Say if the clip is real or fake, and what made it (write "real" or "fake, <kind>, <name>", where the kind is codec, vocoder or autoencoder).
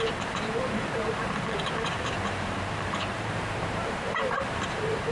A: fake, vocoder, BigVGAN v2